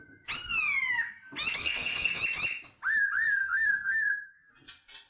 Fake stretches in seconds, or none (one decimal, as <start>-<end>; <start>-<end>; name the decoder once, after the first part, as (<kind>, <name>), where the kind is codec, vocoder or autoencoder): 1.6-2.2 (codec, SNAC); 3.4-4.5